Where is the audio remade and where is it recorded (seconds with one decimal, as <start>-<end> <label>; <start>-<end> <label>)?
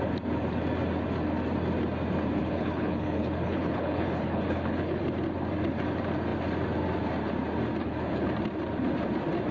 0.0-2.4 recorded; 2.4-5.0 remade; 5.0-7.8 recorded; 7.8-8.3 remade; 8.3-9.5 recorded